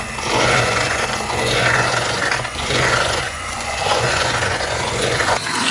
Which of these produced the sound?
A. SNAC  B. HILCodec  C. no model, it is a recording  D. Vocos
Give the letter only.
D